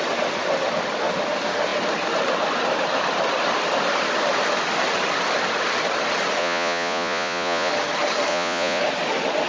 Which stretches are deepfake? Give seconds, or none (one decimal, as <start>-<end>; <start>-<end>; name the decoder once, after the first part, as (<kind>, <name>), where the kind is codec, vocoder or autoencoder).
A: 6.4-7.7 (vocoder, Vocos); 8.3-8.8